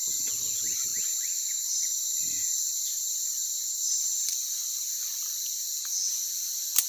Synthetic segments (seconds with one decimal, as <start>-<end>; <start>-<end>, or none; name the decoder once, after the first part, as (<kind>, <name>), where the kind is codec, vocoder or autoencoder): 0.9-5.0 (vocoder, BigVGAN v2)

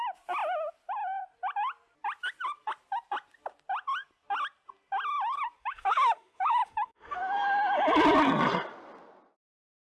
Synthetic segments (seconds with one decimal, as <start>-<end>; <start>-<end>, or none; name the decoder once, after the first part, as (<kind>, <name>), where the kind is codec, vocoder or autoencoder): 5.6-7.2 (autoencoder, DAC-VAE)